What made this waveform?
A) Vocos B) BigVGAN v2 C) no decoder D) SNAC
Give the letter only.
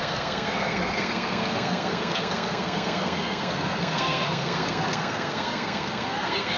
D